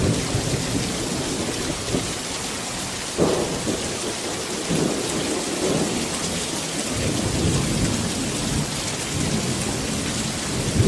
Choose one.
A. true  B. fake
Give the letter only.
A